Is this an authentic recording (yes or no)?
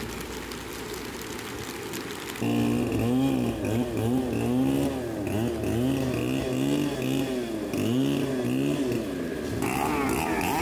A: yes